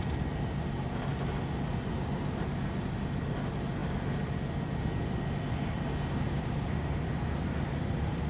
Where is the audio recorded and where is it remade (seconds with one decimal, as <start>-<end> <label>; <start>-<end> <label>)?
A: 0.0-8.3 recorded